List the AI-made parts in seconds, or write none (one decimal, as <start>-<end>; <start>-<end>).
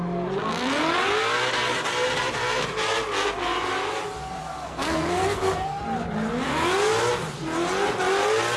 4.4-5.8